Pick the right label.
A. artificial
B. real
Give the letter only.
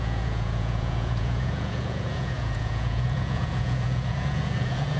A